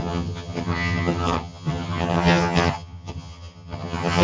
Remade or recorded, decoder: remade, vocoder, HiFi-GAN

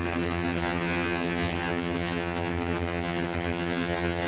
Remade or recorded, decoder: remade, vocoder, HiFi-GAN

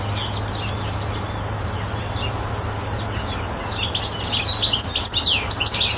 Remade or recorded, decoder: recorded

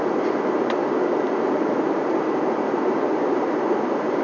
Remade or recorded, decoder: recorded